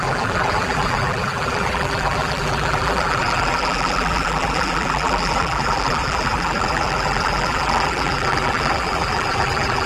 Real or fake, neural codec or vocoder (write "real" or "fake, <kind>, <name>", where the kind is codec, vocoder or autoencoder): fake, vocoder, BigVGAN v2